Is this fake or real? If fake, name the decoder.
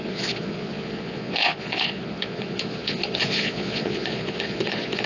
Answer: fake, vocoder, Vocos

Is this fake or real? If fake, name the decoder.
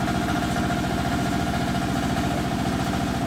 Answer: real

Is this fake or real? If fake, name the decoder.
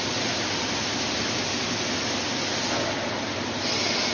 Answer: real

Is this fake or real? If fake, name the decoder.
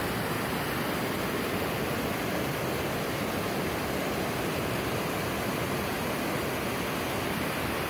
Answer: real